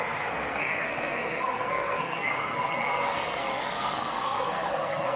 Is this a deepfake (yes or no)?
yes